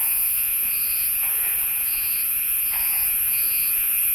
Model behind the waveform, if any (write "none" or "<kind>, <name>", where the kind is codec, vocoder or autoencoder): vocoder, Vocos